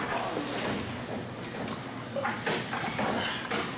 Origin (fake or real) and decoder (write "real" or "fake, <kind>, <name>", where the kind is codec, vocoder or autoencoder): real